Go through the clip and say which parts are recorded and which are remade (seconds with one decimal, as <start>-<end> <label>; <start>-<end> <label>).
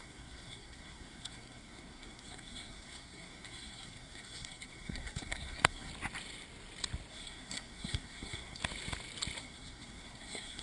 0.0-5.9 remade; 5.9-7.1 recorded; 7.1-8.6 remade; 8.6-9.4 recorded; 9.4-10.6 remade